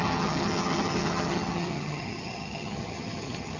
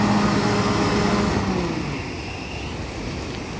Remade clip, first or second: first